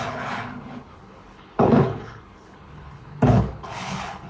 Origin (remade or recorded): remade